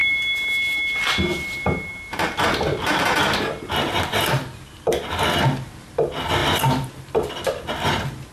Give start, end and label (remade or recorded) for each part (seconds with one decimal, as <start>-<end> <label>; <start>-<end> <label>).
0.0-6.4 recorded; 6.4-6.9 remade; 6.9-8.3 recorded